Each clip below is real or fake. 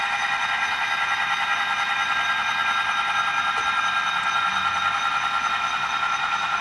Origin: real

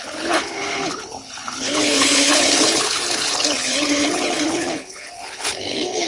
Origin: fake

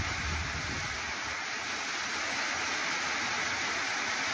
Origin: real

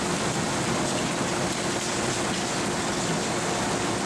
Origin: real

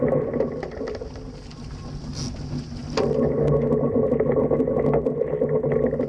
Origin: real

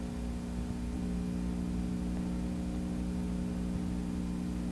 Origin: real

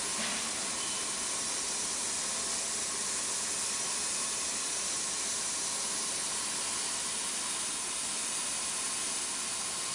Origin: real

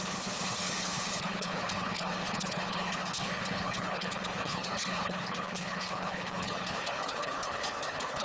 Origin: fake